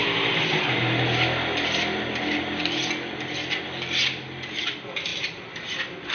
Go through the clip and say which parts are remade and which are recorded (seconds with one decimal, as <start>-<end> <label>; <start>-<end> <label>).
0.0-6.1 recorded